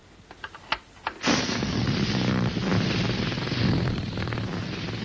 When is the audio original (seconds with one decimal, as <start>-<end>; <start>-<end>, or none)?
0.0-1.4; 1.8-5.0